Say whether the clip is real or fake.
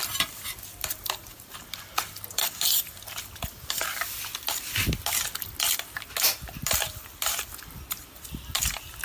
real